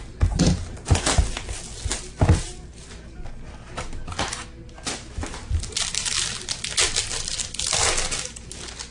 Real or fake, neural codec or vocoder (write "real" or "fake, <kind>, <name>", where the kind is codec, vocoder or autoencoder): real